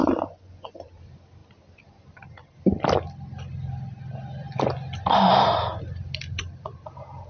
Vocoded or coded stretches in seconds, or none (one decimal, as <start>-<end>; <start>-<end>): 0.0-0.8